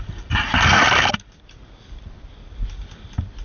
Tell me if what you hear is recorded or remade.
recorded